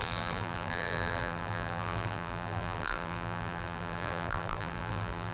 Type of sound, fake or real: fake